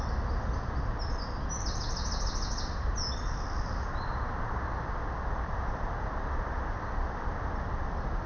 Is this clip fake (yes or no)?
no